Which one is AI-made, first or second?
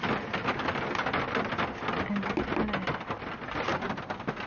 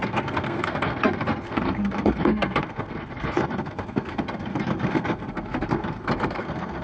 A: second